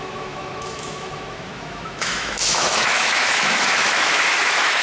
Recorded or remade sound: remade